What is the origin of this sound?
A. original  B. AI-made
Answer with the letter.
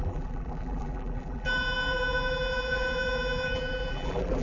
B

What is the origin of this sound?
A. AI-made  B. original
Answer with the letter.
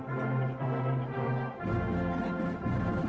A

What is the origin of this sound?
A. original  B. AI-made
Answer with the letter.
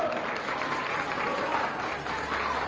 A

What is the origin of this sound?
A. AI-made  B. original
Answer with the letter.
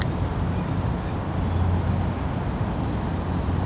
B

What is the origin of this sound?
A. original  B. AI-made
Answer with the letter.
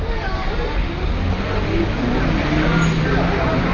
A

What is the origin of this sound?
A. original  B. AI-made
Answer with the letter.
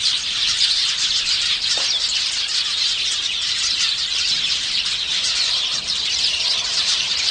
B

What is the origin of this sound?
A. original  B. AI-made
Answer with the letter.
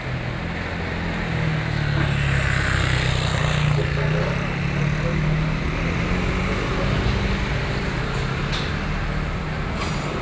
A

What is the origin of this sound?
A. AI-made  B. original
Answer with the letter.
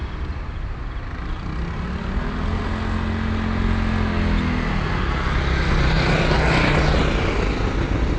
B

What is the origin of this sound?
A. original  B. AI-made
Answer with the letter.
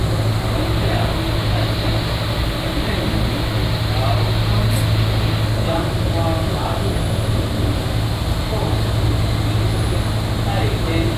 A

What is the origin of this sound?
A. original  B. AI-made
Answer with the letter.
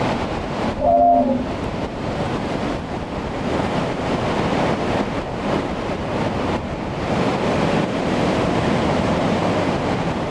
B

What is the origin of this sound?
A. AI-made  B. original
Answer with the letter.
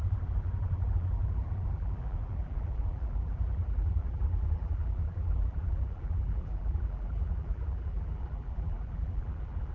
A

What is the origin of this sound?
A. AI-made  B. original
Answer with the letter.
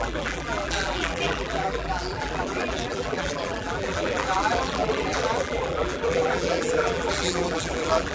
A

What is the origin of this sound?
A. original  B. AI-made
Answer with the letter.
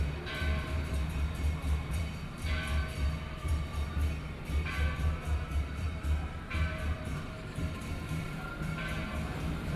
B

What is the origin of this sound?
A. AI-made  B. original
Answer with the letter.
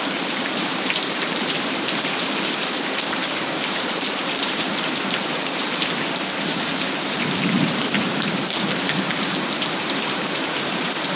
A